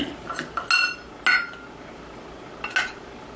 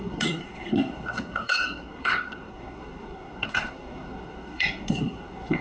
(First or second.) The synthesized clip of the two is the second